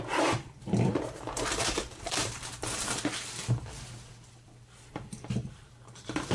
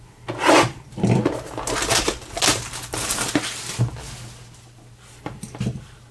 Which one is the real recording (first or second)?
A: second